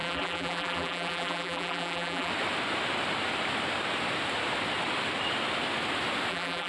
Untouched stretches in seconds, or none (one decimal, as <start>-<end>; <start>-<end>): 2.3-6.3